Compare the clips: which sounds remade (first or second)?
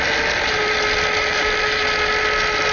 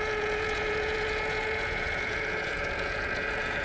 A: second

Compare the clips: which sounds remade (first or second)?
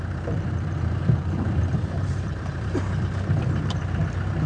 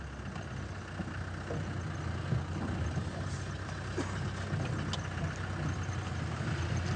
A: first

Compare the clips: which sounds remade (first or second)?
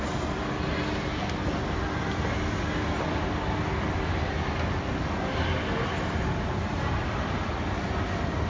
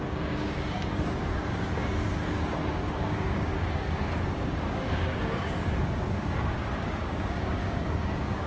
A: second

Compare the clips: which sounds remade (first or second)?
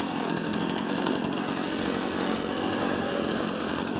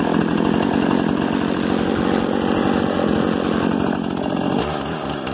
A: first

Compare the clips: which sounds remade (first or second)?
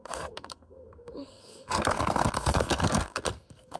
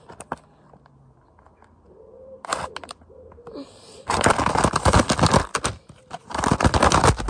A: first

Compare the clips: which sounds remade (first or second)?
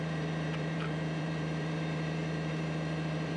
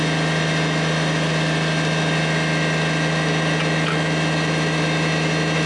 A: first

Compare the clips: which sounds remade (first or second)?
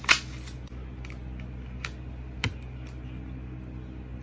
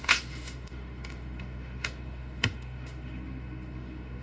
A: second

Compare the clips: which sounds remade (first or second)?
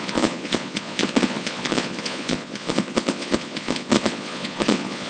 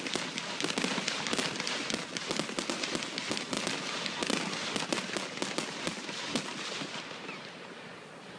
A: first